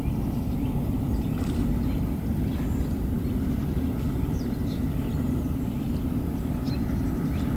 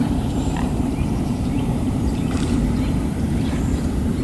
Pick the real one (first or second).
first